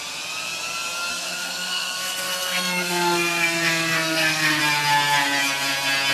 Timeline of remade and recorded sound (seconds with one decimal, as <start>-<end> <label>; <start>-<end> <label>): 0.0-1.1 recorded; 1.1-4.6 remade; 4.6-6.1 recorded

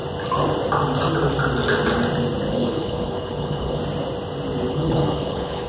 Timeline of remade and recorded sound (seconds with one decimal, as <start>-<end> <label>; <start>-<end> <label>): 0.0-2.5 recorded; 2.5-3.8 remade; 3.8-4.7 recorded; 4.7-5.7 remade